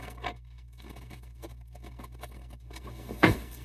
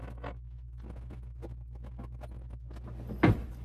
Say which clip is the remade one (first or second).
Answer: first